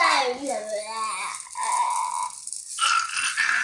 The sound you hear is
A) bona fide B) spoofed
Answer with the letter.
A